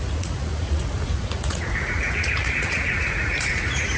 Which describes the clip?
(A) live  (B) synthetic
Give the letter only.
B